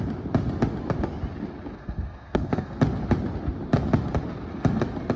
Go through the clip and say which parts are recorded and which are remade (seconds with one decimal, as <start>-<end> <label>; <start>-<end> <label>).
0.0-1.8 recorded; 1.8-2.8 remade; 2.8-5.2 recorded